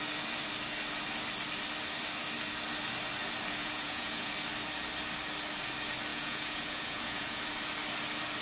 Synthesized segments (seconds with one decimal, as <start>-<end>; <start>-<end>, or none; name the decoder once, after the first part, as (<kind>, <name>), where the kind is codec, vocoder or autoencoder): 3.6-4.3 (vocoder, Vocos); 6.1-7.4